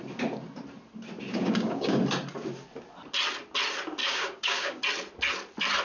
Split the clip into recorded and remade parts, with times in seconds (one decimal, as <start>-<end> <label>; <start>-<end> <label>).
0.0-1.3 recorded; 1.3-2.0 remade; 2.0-4.0 recorded; 4.0-4.8 remade; 4.8-5.8 recorded